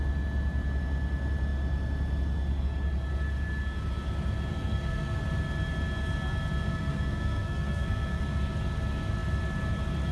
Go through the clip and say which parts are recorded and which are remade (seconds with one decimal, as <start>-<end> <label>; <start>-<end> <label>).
0.0-4.5 recorded; 4.5-5.2 remade; 5.2-6.7 recorded; 6.7-8.2 remade; 8.2-10.1 recorded